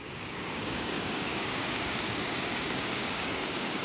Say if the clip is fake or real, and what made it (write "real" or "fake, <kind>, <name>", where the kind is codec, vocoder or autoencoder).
fake, codec, DAC